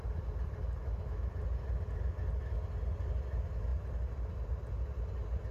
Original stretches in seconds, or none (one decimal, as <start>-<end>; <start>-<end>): 0.0-0.8; 1.3-5.5

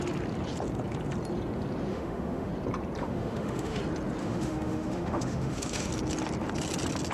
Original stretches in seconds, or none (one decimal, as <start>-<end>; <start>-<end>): 0.0-1.9; 2.5-3.0; 3.8-4.2; 5.9-7.1

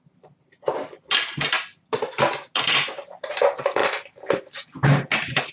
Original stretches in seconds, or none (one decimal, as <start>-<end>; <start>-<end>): 0.0-5.5

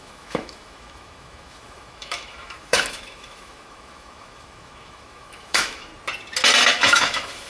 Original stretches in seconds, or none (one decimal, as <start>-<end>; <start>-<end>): 5.9-6.7